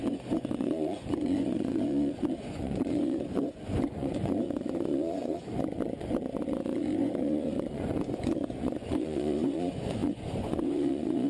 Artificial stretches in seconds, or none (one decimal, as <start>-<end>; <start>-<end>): 0.0-11.3